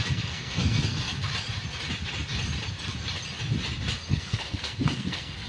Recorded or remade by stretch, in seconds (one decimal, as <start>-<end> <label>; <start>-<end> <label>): 0.0-1.3 remade; 1.3-4.1 recorded; 4.1-5.5 remade

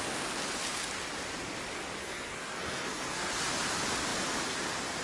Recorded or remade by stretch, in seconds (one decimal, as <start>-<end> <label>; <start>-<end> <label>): 0.0-2.0 recorded; 2.0-3.3 remade; 3.3-5.0 recorded

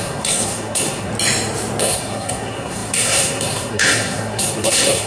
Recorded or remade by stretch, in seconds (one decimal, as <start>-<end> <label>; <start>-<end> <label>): 0.0-1.1 remade; 1.1-1.8 recorded; 1.8-5.1 remade

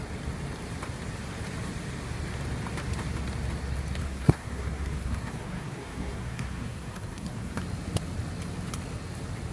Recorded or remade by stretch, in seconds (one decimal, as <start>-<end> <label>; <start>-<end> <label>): 0.0-4.0 recorded; 4.0-7.6 remade; 7.6-9.5 recorded